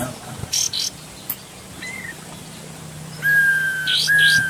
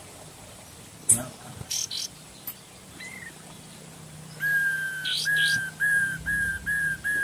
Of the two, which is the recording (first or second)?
first